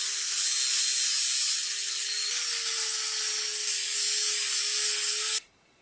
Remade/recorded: recorded